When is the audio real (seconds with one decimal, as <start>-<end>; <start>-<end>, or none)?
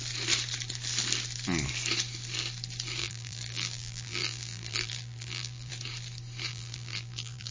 0.0-3.0; 5.7-6.5